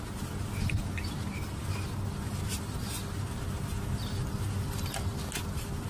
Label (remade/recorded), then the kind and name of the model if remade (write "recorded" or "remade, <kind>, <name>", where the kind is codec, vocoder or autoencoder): recorded